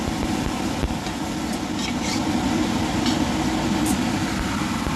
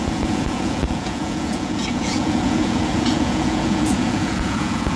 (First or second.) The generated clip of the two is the second